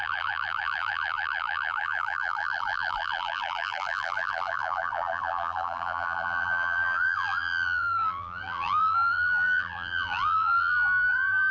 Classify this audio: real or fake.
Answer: fake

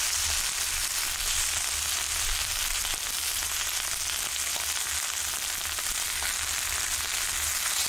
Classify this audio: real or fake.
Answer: real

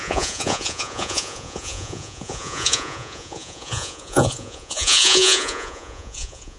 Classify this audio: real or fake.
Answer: fake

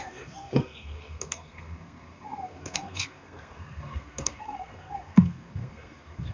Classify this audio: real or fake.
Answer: fake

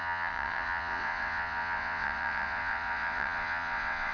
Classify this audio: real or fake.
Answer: fake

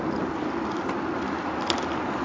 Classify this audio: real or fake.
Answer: real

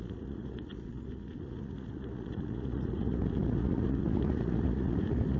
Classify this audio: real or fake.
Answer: fake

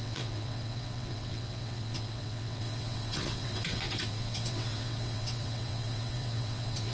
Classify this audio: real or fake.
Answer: fake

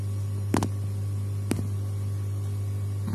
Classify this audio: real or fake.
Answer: real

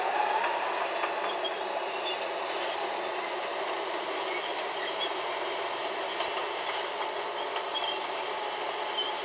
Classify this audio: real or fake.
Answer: real